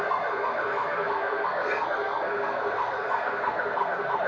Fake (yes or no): yes